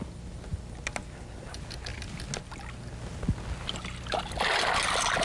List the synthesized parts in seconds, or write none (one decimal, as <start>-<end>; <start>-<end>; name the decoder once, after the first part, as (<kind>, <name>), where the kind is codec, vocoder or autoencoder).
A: none